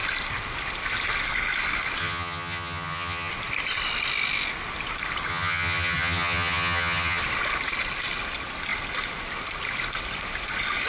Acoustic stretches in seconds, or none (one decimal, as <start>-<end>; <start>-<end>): 0.0-2.0; 3.3-5.3; 7.2-10.9